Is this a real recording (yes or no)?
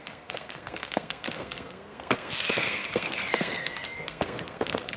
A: no